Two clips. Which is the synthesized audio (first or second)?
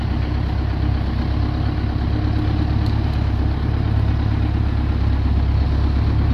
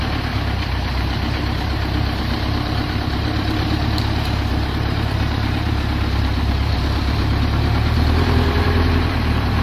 second